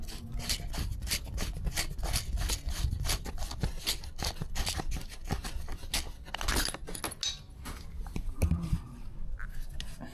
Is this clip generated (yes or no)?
no